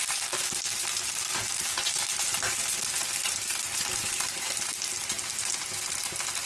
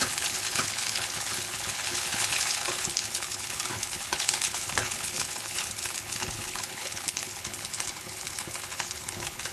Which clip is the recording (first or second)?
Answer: first